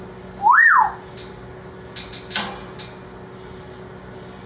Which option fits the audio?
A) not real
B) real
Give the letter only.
B